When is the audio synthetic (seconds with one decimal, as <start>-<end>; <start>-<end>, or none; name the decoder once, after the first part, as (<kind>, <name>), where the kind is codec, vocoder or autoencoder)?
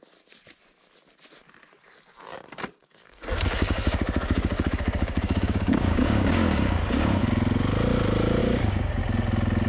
2.8-7.3 (codec, DAC); 8.4-9.0